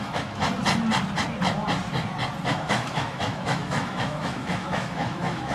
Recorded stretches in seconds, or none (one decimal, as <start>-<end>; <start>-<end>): 0.4-2.5